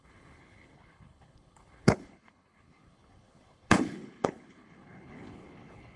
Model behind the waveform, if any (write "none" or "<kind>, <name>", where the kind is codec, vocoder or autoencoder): codec, HILCodec